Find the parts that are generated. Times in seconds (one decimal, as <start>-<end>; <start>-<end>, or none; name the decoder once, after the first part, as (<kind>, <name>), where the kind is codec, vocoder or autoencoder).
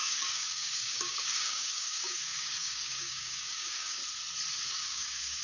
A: 0.0-4.0 (codec, DAC); 4.7-5.4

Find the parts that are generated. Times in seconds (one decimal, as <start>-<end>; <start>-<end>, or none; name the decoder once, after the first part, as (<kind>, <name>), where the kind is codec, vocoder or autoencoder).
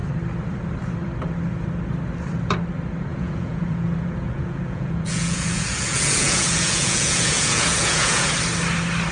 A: 3.1-8.3 (vocoder, Vocos)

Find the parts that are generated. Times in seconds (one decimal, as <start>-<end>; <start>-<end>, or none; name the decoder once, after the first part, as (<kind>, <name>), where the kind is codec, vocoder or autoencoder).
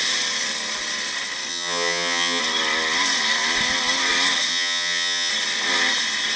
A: 1.5-2.4 (vocoder, HiFi-GAN); 4.5-5.3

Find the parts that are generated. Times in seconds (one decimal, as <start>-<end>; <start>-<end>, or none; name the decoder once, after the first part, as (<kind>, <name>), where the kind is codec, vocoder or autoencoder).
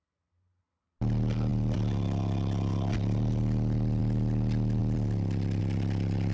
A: 1.5-4.0 (vocoder, BigVGAN v2); 4.8-5.6